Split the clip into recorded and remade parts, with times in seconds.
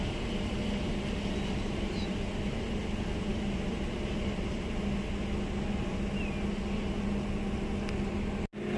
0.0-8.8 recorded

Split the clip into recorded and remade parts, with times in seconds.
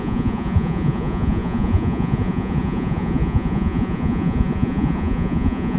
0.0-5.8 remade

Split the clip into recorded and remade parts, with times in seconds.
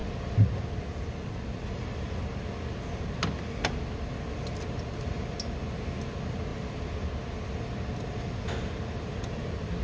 0.0-9.8 recorded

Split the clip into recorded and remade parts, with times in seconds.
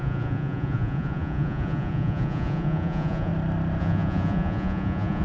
0.0-3.3 remade; 3.3-3.8 recorded; 3.8-5.2 remade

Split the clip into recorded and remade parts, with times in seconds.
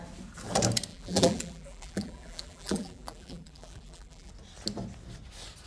0.0-0.9 recorded; 0.9-4.3 remade; 4.3-5.7 recorded